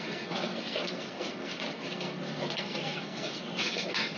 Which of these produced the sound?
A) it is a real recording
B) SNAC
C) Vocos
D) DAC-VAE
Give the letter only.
B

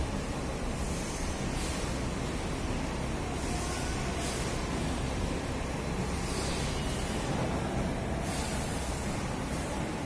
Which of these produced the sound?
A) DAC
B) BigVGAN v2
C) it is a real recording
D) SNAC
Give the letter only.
C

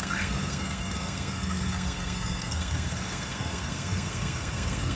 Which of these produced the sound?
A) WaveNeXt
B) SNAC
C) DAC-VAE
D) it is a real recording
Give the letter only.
B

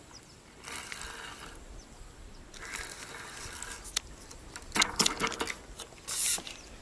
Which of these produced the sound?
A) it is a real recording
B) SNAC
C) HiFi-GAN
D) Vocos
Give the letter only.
A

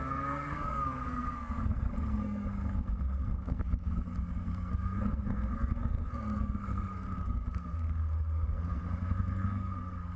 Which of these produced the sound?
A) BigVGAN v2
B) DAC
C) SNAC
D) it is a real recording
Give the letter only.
C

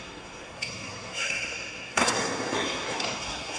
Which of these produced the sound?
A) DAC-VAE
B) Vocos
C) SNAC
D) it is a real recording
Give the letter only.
C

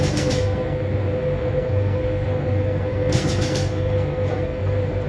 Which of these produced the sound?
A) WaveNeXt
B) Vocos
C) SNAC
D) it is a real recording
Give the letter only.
C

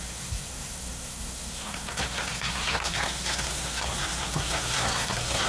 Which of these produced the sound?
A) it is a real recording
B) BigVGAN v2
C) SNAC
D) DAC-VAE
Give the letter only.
C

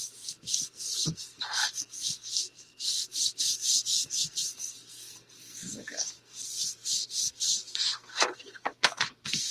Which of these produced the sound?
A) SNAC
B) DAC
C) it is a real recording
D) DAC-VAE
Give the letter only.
A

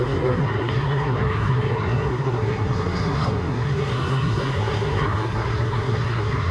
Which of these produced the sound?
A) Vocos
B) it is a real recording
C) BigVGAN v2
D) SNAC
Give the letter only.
D